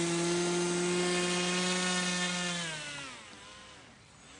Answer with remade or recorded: recorded